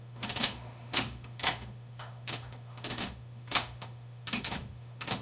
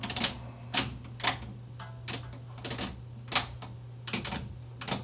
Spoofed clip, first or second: first